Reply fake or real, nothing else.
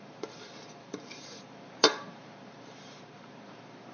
fake